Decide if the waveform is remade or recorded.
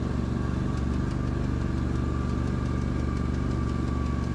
recorded